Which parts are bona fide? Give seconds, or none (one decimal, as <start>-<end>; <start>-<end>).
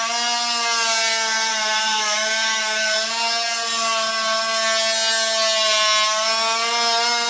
0.0-1.5; 3.1-7.3